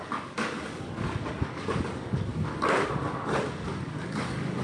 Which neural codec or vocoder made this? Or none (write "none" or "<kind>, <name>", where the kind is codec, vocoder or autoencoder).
codec, DAC